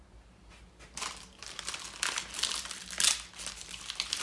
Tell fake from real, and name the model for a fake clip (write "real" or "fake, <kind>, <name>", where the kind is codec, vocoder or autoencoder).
real